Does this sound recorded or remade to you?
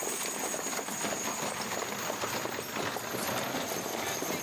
recorded